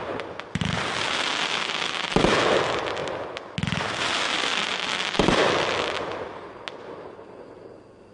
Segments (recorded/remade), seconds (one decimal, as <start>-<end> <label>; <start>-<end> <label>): 0.0-8.1 recorded